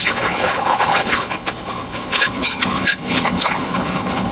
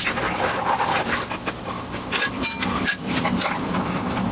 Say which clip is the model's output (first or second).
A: first